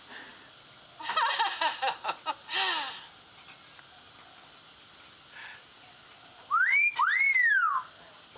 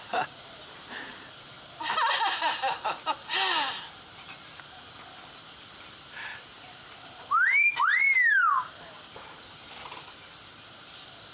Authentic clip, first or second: first